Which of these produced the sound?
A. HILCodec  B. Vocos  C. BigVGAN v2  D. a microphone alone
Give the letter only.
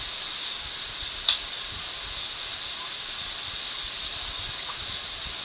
D